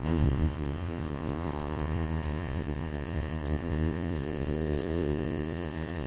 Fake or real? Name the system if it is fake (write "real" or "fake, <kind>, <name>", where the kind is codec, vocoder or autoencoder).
fake, vocoder, Vocos